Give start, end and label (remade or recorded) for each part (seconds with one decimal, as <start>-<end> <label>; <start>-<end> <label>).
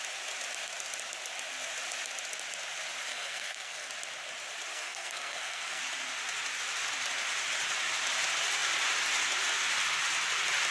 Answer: 0.0-3.1 recorded; 3.1-3.9 remade; 3.9-4.7 recorded; 4.7-5.8 remade; 5.8-10.7 recorded